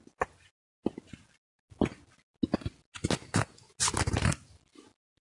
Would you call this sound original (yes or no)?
yes